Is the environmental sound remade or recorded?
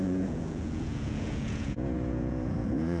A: remade